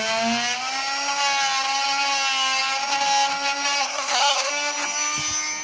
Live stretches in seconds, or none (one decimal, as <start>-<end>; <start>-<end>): 0.0-3.8; 4.5-5.6